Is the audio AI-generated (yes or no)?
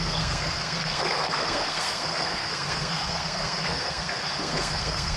yes